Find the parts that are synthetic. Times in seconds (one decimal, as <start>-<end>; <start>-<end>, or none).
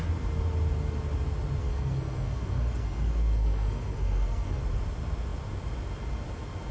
1.6-4.6